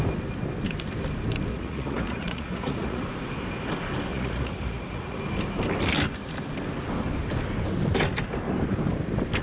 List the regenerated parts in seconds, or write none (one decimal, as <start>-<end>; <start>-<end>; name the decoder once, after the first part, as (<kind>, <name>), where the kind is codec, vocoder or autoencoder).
1.5-3.0 (vocoder, Vocos); 4.1-5.2